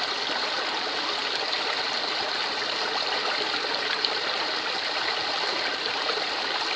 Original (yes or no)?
yes